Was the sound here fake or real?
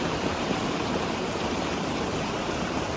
fake